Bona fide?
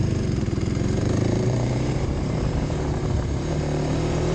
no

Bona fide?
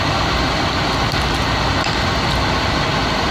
yes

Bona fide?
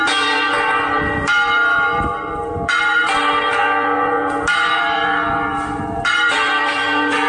no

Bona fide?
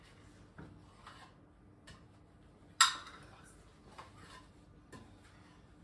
yes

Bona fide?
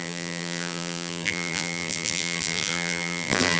no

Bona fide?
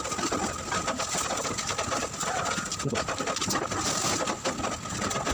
yes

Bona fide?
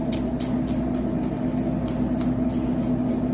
yes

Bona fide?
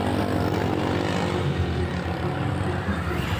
yes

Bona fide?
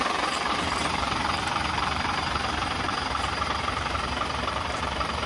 no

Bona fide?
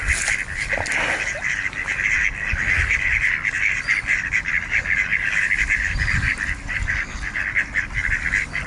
yes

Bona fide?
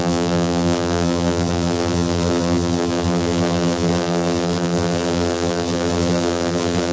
no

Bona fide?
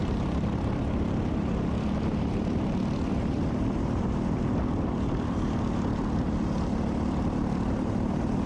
no